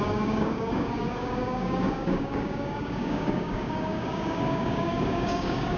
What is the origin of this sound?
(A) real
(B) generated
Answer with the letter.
B